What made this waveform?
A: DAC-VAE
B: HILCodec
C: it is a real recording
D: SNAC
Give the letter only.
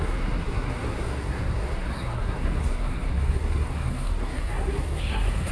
D